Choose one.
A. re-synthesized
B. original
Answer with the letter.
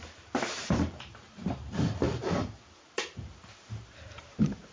A